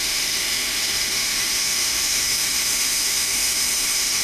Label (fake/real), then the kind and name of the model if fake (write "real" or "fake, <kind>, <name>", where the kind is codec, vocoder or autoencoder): fake, autoencoder, DAC-VAE